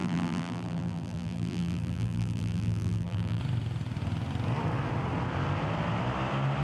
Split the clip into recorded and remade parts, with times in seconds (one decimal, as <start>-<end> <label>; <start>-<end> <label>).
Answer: 0.0-3.4 remade; 3.4-6.6 recorded

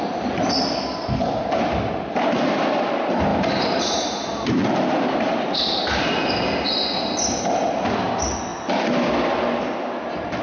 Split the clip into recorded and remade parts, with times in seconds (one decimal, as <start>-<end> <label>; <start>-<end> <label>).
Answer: 0.0-3.3 recorded; 3.3-5.3 remade; 5.3-10.4 recorded

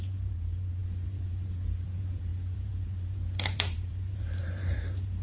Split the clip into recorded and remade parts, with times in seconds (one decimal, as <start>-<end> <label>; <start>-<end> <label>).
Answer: 0.0-5.2 remade

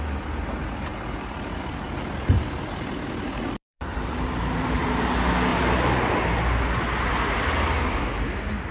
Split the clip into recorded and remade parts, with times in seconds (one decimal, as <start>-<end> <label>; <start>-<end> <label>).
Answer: 0.0-3.6 recorded; 3.6-4.8 remade; 4.8-5.5 recorded; 5.5-6.2 remade; 6.2-8.7 recorded

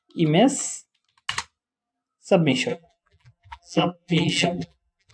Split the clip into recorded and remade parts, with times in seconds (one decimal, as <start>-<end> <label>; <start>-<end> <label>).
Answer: 0.0-2.7 recorded; 2.7-5.1 remade

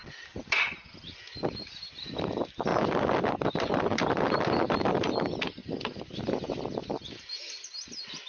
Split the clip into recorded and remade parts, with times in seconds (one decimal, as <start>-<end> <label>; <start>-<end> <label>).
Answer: 0.0-8.3 recorded

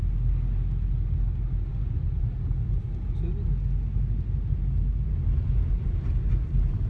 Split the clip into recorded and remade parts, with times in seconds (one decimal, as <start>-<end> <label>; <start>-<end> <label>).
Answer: 0.0-6.9 recorded

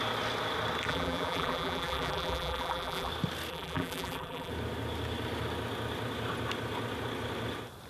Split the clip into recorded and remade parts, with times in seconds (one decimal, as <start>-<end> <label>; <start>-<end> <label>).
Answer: 0.0-0.9 recorded; 0.9-3.1 remade; 3.1-3.5 recorded; 3.5-4.5 remade; 4.5-7.9 recorded